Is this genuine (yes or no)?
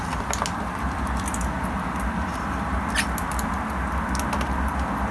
yes